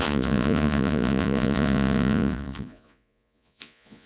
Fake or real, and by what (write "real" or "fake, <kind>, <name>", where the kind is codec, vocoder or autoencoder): fake, vocoder, Vocos